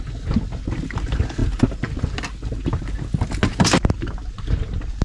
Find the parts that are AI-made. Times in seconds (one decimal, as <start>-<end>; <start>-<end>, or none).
none